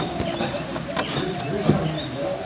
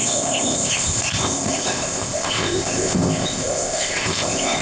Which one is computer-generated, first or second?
second